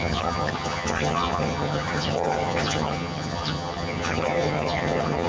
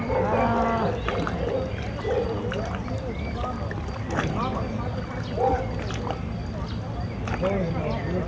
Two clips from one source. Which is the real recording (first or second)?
second